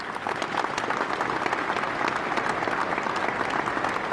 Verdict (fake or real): real